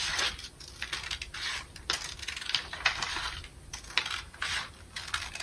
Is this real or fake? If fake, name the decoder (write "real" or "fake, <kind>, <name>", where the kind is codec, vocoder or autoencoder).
real